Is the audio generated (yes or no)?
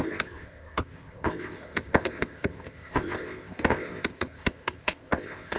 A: yes